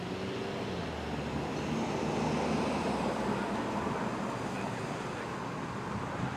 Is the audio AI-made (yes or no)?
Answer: no